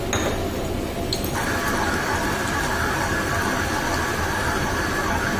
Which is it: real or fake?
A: real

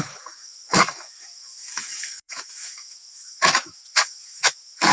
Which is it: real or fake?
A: fake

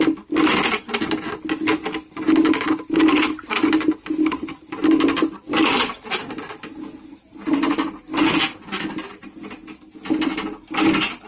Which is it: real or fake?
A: real